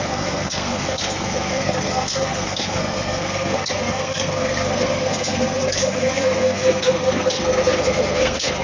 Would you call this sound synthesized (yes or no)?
yes